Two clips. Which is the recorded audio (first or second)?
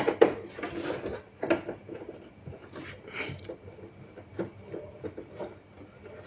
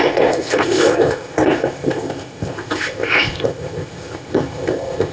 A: first